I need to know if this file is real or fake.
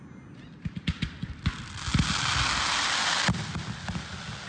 real